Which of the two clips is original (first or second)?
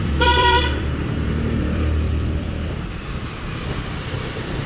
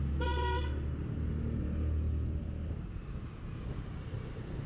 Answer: second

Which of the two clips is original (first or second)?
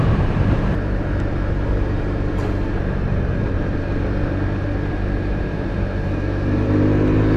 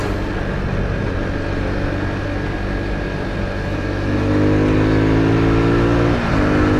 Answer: second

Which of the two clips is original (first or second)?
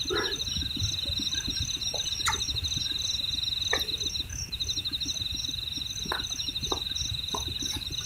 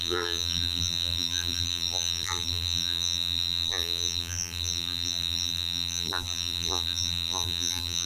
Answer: first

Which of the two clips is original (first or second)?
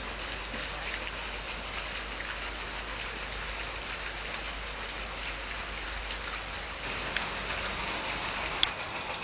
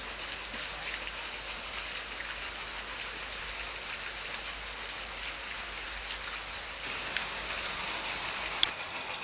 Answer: second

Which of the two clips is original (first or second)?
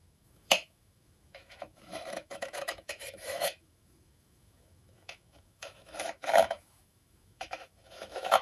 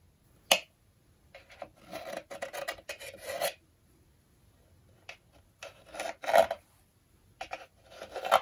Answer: second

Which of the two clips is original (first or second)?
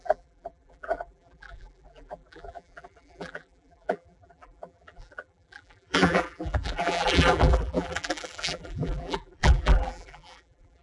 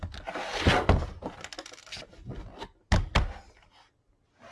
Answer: second